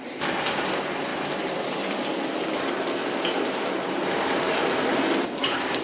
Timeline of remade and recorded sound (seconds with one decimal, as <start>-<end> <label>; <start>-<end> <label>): 0.0-5.8 recorded